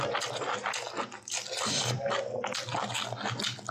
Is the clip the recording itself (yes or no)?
yes